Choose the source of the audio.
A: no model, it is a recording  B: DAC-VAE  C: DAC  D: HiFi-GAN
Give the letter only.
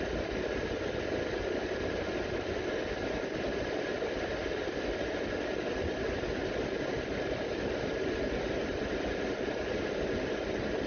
A